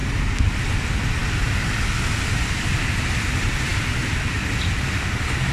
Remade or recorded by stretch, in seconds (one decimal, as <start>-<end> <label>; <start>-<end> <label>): 0.0-5.5 recorded